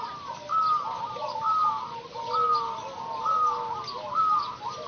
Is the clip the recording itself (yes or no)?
yes